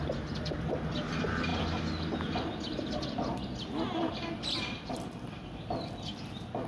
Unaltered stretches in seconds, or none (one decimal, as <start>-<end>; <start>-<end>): 0.0-6.7